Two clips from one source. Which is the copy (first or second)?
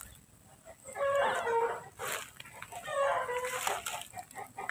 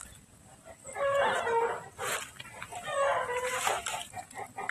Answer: second